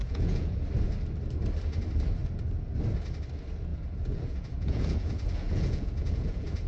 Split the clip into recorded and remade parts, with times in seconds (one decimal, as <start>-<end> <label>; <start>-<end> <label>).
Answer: 0.0-0.6 remade; 0.6-3.7 recorded; 3.7-6.7 remade